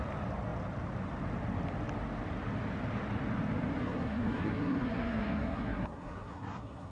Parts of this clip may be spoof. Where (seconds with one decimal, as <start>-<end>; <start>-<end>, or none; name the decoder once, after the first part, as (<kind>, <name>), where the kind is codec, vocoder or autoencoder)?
3.8-6.9 (codec, SNAC)